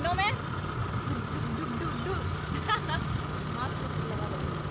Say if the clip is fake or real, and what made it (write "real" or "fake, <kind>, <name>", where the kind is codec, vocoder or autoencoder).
real